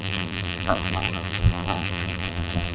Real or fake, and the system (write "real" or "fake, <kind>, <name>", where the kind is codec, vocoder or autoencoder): fake, vocoder, BigVGAN v2